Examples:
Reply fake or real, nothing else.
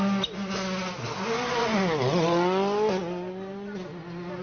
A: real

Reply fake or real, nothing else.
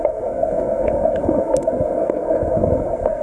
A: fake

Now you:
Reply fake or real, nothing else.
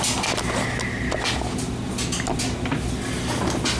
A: real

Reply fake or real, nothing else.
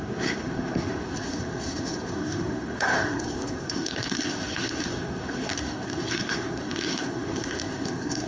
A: fake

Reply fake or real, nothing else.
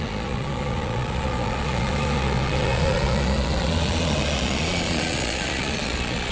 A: fake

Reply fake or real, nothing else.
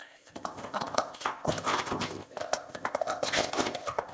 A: fake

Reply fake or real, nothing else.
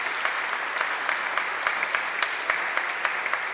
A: real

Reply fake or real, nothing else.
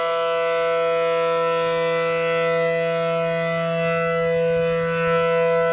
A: real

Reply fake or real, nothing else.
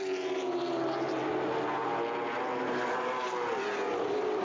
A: real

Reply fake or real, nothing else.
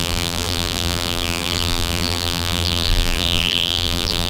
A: fake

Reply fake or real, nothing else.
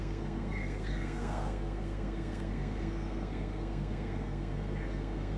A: fake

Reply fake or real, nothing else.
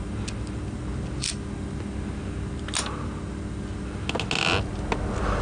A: real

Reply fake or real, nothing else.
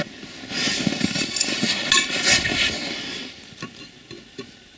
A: real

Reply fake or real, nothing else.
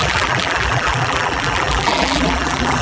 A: fake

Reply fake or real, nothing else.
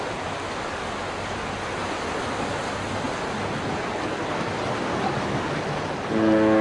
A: real